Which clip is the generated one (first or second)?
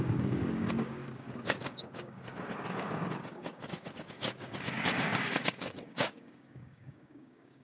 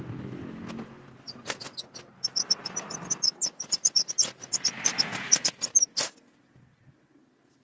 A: first